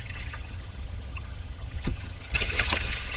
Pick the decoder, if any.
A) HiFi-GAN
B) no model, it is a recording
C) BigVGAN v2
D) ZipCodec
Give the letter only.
A